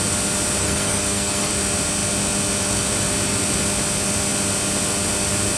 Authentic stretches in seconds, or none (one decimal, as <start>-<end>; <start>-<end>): 0.0-0.6; 1.5-5.6